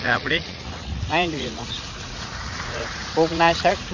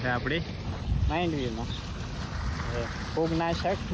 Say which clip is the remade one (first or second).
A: first